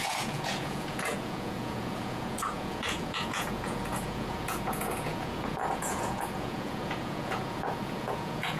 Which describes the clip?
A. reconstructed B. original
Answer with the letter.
A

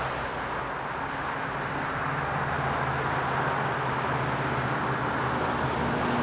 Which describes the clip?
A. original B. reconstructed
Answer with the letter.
A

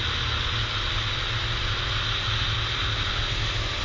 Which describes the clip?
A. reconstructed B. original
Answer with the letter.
B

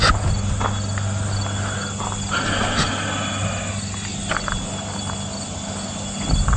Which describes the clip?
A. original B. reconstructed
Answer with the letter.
A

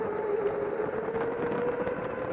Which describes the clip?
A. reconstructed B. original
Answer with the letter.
B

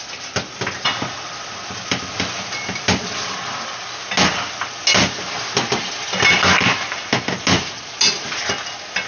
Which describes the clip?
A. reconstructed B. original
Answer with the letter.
B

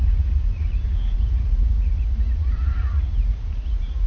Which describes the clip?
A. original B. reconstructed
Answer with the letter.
B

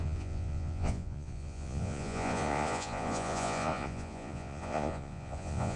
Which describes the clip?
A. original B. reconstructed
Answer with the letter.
B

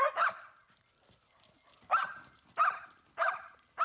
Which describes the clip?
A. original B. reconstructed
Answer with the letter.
A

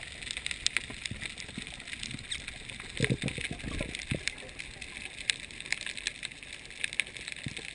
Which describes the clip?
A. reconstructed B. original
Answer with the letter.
B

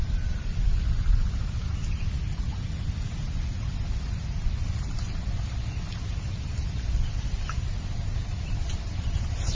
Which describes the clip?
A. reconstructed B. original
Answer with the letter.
B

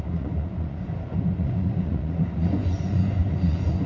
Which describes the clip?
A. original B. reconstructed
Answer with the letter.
B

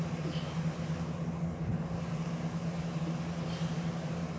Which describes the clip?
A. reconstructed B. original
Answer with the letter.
B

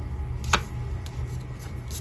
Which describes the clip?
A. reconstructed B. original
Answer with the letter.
B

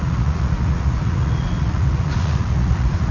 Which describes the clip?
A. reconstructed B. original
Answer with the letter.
A